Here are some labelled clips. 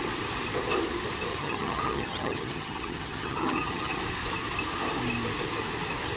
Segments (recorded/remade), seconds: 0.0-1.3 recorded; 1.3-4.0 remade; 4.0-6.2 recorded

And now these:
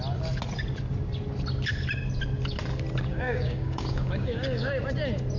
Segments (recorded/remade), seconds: 0.0-3.1 recorded; 3.1-4.7 remade; 4.7-5.4 recorded

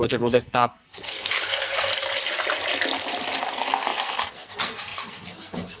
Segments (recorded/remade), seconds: 0.0-1.9 remade; 1.9-3.5 recorded; 3.5-5.8 remade

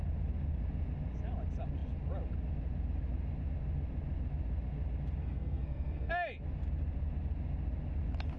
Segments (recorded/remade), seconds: 0.0-5.2 recorded; 5.2-6.1 remade; 6.1-8.4 recorded